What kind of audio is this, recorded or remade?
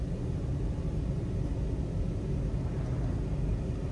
recorded